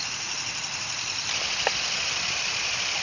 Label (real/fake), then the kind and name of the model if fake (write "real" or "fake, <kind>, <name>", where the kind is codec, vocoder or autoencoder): real